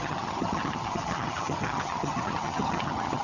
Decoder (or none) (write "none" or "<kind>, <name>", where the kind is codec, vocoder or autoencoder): vocoder, HiFi-GAN